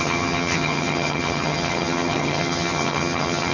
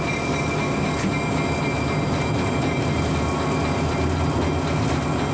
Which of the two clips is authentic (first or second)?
second